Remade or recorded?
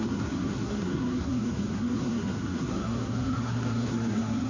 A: remade